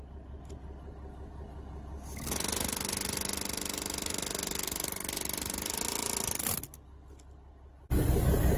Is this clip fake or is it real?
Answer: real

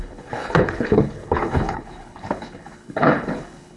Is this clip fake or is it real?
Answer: fake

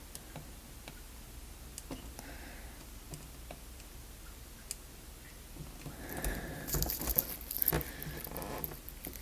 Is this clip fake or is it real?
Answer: real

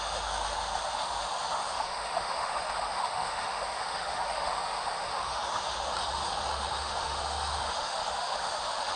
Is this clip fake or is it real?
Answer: fake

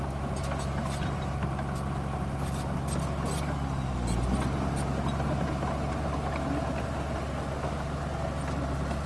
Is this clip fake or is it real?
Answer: real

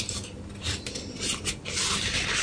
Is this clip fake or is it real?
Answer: real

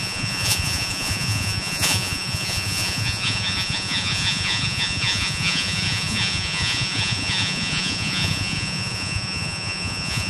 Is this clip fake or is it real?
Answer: fake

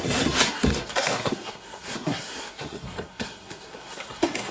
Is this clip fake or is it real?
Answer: fake